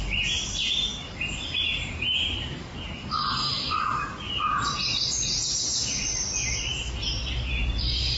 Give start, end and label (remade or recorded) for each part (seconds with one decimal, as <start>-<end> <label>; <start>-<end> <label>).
0.0-8.2 remade